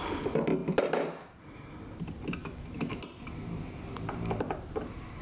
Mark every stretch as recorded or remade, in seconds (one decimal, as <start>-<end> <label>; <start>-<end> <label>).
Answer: 0.0-2.4 recorded; 2.4-3.0 remade; 3.0-5.2 recorded